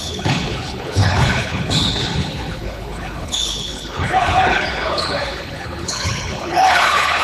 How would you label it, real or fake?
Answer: fake